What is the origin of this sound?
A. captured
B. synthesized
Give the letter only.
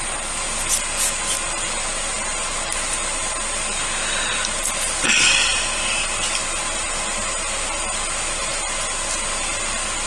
A